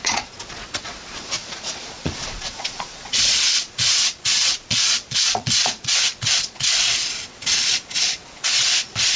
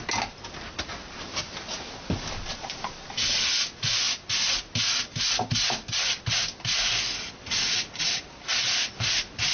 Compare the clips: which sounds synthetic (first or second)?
first